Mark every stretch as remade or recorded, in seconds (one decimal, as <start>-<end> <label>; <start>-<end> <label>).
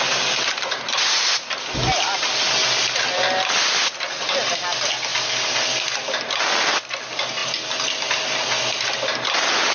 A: 0.0-9.7 recorded